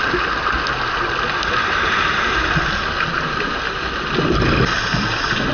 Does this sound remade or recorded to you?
recorded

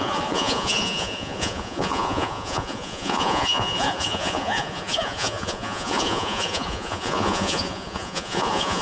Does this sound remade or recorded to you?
remade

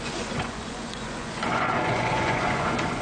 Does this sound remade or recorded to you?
remade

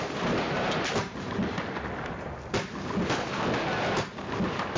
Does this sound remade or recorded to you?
recorded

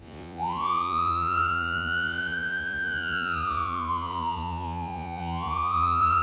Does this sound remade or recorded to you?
remade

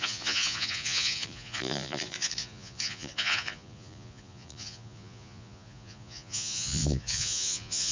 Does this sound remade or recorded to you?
remade